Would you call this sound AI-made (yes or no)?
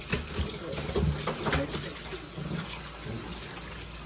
no